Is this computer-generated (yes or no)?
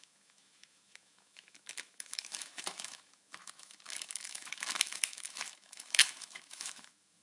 yes